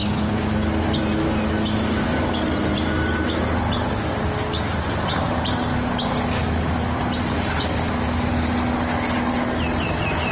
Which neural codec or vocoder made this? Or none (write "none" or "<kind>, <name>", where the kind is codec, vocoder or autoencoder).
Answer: none